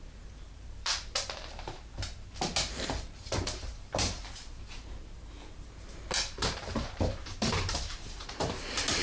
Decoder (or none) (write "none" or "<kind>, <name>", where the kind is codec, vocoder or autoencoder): vocoder, BigVGAN v2